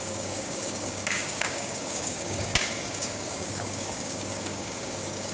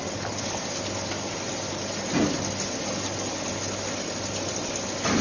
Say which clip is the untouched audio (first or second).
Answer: second